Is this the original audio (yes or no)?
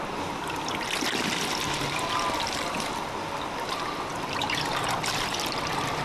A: no